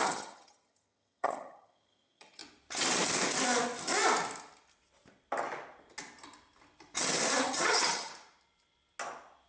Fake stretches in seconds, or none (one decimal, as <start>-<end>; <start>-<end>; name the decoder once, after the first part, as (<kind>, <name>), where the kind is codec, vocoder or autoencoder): 0.0-2.4 (vocoder, HiFi-GAN); 7.4-8.1